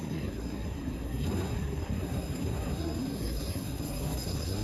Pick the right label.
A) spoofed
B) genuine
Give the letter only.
A